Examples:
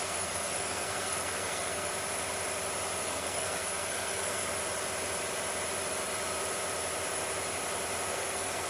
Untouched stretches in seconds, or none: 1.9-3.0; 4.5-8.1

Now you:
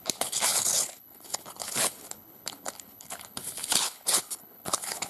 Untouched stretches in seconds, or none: none

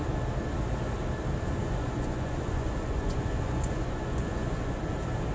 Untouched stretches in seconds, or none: 0.0-1.6; 4.8-5.3

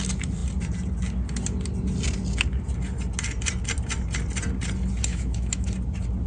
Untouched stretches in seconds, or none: 0.0-5.1; 5.7-6.3

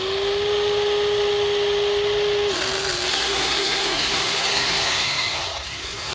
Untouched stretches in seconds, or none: 0.0-3.1